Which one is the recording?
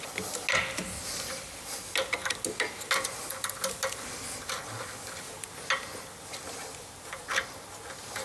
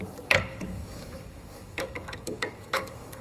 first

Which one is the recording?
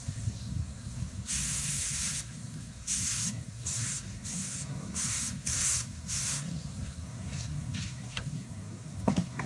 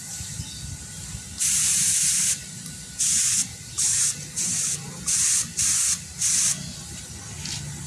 second